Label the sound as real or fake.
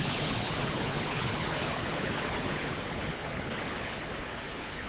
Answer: fake